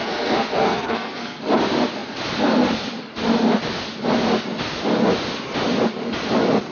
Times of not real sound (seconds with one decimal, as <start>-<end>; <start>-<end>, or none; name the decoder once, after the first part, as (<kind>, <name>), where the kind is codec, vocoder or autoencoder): 0.0-1.4 (codec, SNAC)